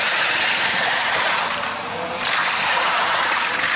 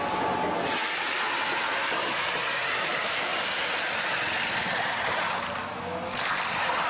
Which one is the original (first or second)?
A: second